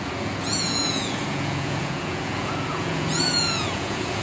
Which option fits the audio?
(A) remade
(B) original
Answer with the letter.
A